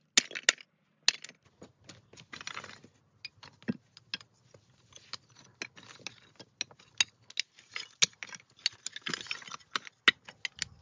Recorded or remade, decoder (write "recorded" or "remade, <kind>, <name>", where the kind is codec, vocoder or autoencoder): recorded